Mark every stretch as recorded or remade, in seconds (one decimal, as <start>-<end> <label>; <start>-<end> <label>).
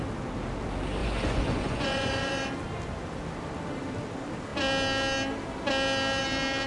0.0-1.0 recorded; 1.0-2.5 remade; 2.5-6.7 recorded